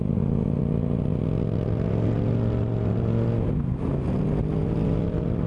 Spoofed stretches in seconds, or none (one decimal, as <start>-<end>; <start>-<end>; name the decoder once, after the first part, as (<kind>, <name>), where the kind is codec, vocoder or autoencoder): none